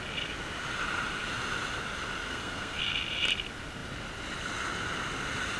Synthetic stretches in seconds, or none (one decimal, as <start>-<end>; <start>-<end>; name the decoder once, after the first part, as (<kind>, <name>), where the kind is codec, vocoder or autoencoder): 2.3-2.8 (codec, SNAC)